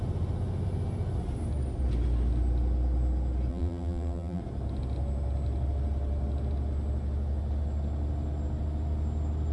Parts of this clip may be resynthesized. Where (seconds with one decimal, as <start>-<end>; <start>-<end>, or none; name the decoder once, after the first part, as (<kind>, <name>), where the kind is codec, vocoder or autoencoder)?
3.5-4.4 (vocoder, BigVGAN v2)